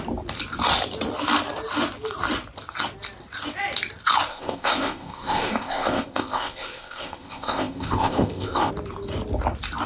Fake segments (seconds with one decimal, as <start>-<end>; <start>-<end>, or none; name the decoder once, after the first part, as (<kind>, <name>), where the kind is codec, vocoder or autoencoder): 4.3-8.7 (codec, ZipCodec)